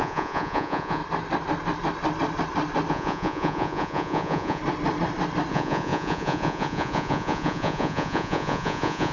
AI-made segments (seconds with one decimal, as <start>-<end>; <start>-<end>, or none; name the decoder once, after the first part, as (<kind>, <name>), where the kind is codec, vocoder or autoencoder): 0.0-1.0 (vocoder, Vocos); 2.9-4.6; 5.5-9.1